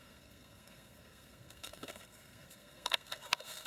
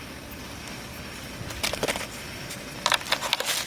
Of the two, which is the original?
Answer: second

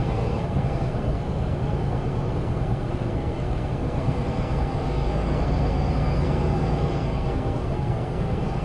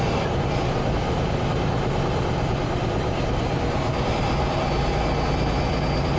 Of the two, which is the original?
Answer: second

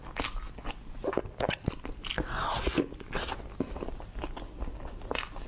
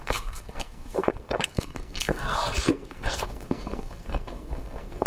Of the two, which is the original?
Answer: first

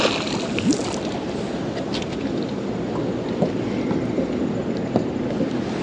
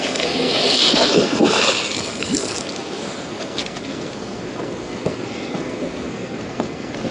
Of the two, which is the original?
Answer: first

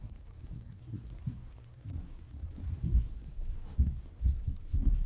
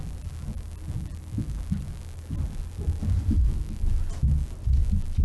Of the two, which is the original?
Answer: second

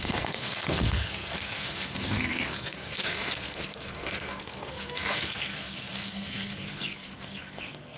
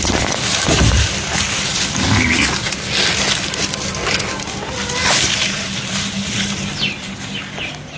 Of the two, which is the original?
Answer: second